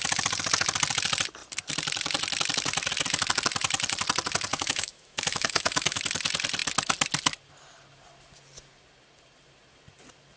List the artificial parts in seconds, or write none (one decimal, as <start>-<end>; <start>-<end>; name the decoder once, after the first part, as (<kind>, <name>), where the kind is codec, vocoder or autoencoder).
4.5-6.0 (autoencoder, DAC-VAE)